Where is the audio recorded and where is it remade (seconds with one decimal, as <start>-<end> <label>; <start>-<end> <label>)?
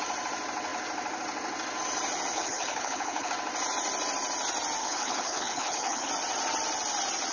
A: 0.0-2.3 recorded; 2.3-3.3 remade; 3.3-4.8 recorded; 4.8-6.1 remade; 6.1-7.3 recorded